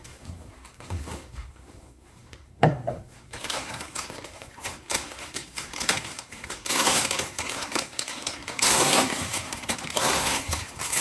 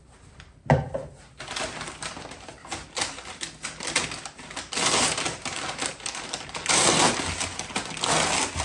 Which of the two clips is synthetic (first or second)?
first